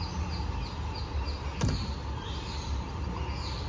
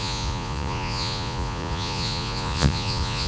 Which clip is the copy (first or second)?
second